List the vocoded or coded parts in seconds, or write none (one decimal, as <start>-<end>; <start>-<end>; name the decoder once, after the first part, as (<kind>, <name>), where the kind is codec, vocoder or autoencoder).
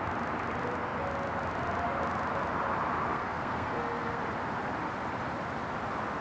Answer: 3.1-4.2 (codec, SNAC)